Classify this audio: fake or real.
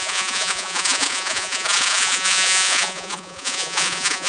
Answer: fake